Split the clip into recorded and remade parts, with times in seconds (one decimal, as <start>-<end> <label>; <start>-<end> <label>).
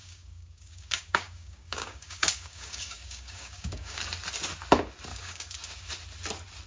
0.0-4.0 remade; 4.0-5.1 recorded; 5.1-5.9 remade; 5.9-6.7 recorded